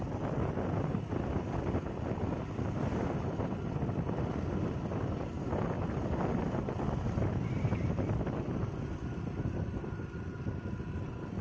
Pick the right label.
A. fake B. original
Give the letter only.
B